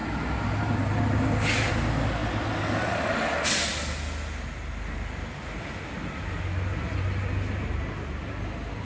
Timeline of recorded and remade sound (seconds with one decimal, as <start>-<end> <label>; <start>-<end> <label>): 0.0-8.8 recorded